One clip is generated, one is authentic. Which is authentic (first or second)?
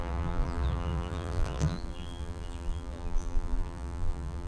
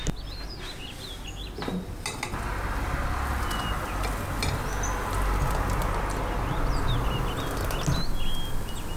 second